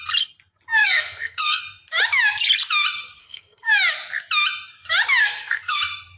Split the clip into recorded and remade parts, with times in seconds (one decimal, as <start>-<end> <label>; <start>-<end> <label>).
0.0-0.8 recorded; 0.8-1.6 remade; 1.6-3.2 recorded; 3.2-3.7 remade; 3.7-5.2 recorded; 5.2-5.8 remade; 5.8-6.2 recorded